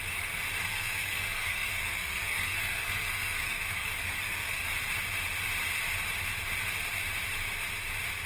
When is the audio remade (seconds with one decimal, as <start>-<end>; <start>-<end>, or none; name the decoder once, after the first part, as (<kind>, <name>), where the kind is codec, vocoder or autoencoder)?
0.6-4.6 (codec, SNAC)